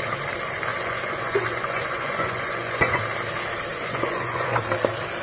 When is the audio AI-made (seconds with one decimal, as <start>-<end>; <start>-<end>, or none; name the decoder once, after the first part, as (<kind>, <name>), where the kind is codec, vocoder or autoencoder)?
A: 0.7-3.0 (vocoder, Vocos); 3.7-4.6

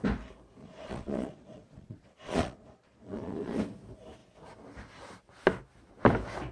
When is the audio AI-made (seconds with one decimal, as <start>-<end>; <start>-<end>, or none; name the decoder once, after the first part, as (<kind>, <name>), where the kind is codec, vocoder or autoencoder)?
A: 0.6-3.6 (vocoder, Vocos)

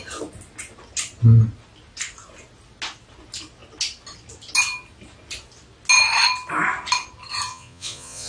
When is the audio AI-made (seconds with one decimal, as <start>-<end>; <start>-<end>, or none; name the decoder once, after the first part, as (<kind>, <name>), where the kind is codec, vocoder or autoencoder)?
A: 7.5-8.3 (vocoder, Vocos)

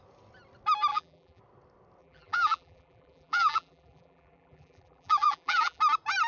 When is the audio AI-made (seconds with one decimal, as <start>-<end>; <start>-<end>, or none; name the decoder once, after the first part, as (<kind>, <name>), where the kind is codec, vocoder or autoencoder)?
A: 0.9-1.4 (vocoder, BigVGAN v2); 2.0-5.8

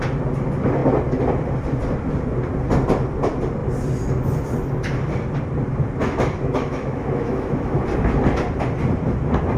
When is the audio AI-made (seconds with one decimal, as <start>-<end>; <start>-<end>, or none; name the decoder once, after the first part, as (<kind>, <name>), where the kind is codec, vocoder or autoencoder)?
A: 6.0-7.8 (autoencoder, DAC-VAE)

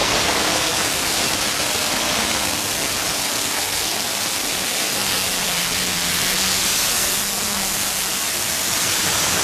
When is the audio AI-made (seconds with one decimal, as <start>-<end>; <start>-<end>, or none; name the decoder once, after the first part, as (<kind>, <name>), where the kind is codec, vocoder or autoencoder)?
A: 0.0-9.4 (codec, SNAC)

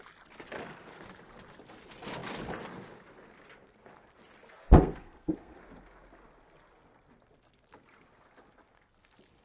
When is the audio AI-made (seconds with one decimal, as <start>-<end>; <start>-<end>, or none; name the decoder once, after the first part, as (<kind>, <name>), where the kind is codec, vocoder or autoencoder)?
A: 4.8-5.6 (codec, SNAC)

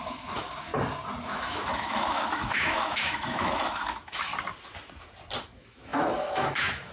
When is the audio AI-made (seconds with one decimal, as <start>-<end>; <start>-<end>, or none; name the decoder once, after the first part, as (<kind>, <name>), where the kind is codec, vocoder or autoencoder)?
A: 0.0-0.7 (autoencoder, DAC-VAE); 1.2-4.3; 5.4-6.9